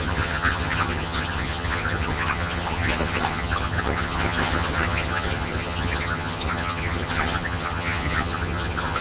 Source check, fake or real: fake